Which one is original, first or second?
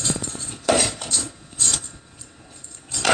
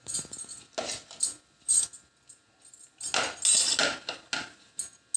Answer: second